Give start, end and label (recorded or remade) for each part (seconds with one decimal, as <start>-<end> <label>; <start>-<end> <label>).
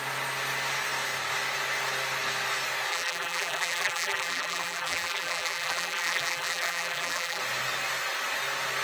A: 0.0-2.9 recorded; 2.9-7.4 remade; 7.4-8.8 recorded